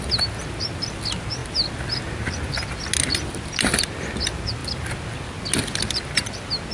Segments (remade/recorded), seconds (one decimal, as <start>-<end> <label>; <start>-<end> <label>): 0.0-6.7 recorded